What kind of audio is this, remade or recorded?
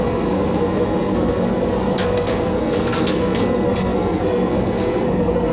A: remade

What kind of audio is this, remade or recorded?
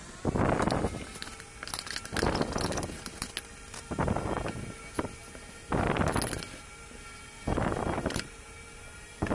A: recorded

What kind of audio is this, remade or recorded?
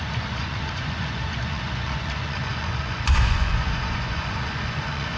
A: remade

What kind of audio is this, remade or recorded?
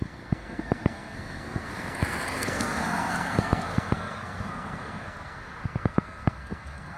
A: remade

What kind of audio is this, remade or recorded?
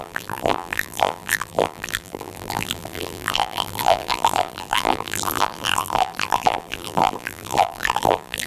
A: remade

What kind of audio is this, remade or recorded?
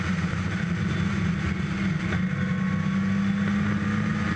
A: recorded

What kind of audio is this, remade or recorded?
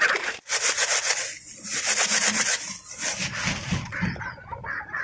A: recorded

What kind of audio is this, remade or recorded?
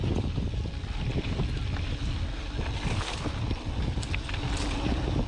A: recorded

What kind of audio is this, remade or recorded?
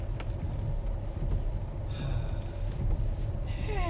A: recorded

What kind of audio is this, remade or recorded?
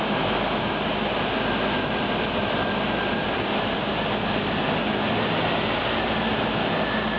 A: recorded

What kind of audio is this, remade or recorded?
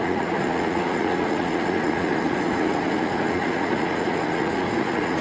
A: remade